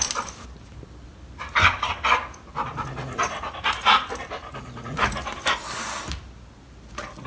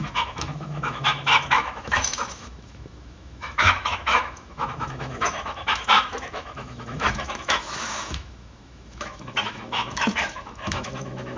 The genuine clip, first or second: first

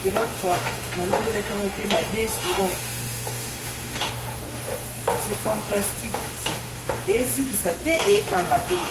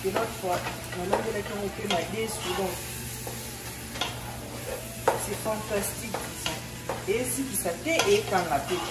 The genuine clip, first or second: second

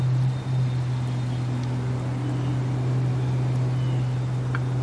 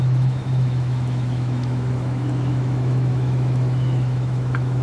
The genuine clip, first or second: first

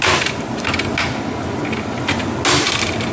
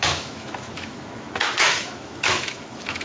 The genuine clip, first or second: first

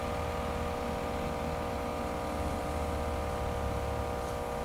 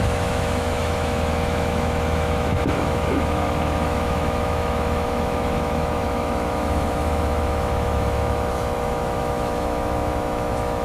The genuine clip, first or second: first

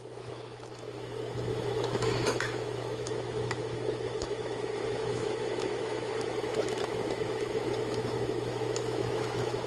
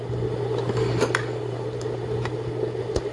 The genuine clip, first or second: second